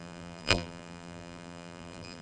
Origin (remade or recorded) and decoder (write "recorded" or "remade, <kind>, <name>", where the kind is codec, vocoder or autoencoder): remade, vocoder, BigVGAN v2